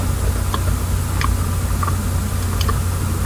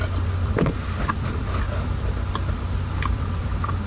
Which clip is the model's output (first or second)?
second